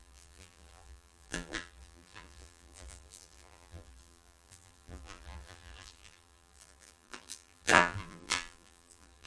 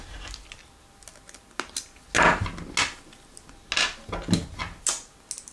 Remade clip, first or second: first